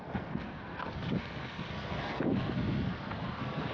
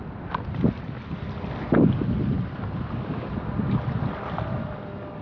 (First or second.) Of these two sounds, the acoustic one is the second